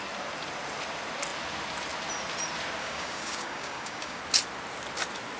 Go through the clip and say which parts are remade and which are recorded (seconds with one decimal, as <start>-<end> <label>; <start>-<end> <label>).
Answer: 0.0-2.8 recorded; 2.8-4.2 remade; 4.2-5.4 recorded